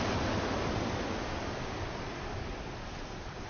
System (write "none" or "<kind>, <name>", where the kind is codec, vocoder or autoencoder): none